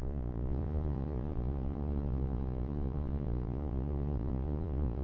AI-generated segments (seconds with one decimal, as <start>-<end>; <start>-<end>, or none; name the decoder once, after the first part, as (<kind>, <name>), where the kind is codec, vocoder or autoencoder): 0.0-5.0 (vocoder, Vocos)

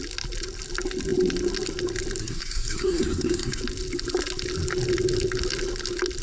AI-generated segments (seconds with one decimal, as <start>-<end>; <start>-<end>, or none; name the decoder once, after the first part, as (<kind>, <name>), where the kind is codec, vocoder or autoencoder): 2.2-3.6 (codec, SNAC)

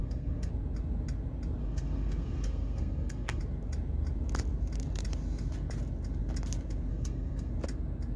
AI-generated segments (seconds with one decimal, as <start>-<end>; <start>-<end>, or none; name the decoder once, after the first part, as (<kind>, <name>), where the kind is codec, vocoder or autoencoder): 0.0-0.5 (codec, SNAC); 1.6-3.4; 6.9-7.5

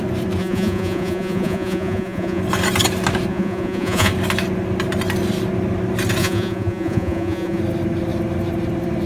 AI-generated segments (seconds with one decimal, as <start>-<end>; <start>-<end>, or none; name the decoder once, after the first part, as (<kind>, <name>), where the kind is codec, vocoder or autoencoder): 0.4-2.4 (vocoder, Vocos); 3.3-4.1; 6.2-7.6

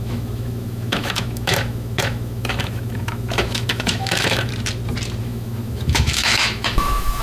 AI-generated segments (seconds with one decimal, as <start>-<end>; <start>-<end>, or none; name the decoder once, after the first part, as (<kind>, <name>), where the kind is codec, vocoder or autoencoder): 0.0-4.5 (autoencoder, DAC-VAE); 5.2-7.2